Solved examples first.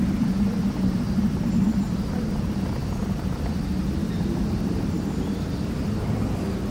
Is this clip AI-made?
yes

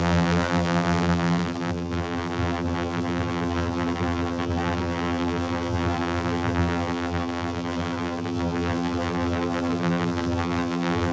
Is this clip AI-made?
yes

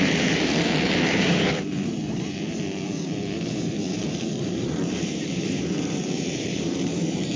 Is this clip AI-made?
yes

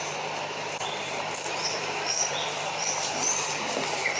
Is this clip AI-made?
yes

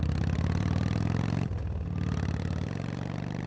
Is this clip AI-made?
yes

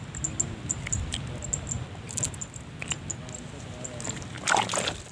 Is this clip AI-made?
no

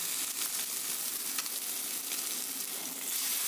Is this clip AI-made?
no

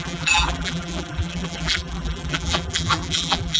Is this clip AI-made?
yes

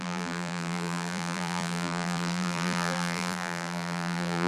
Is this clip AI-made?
yes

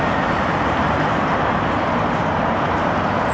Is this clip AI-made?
yes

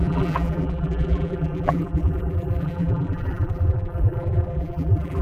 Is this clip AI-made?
yes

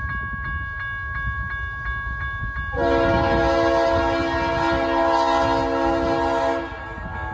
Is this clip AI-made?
no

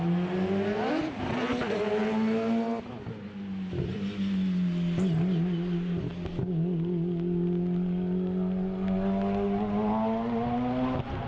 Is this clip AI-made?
no